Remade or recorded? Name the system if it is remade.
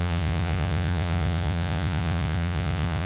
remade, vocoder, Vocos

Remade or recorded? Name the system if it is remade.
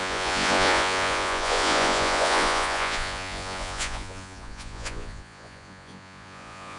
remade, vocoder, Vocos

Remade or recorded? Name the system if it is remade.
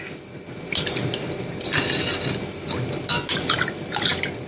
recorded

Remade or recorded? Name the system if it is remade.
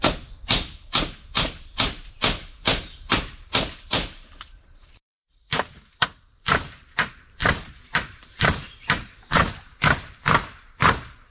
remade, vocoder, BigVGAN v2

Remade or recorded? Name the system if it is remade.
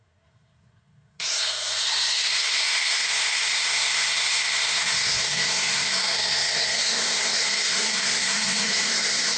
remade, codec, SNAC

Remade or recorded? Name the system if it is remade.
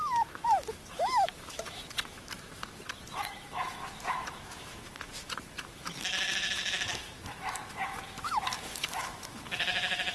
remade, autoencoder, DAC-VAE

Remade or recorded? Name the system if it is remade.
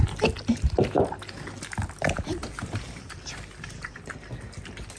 recorded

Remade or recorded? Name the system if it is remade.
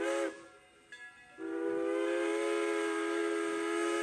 recorded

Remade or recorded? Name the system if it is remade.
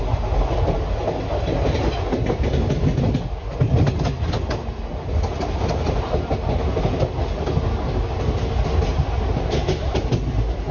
recorded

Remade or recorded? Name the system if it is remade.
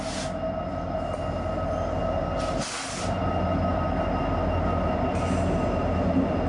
recorded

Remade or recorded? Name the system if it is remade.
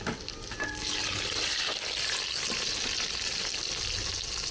recorded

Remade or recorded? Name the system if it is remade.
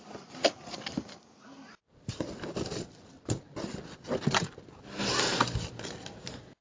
recorded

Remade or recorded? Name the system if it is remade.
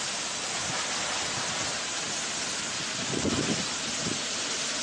recorded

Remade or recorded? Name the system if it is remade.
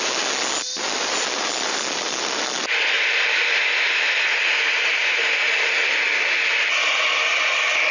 recorded